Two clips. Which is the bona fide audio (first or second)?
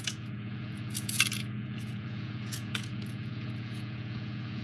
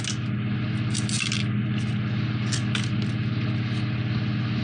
second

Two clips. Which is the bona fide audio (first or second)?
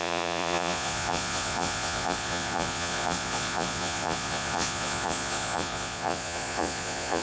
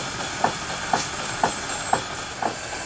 second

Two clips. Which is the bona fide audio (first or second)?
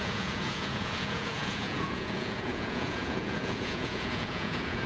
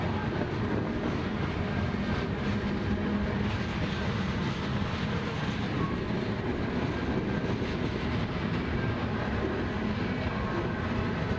second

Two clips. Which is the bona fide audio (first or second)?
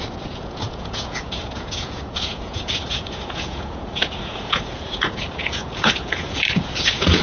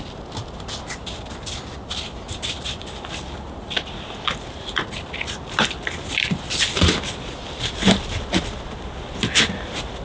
second